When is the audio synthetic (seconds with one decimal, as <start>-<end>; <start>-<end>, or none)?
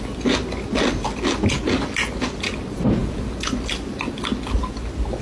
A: none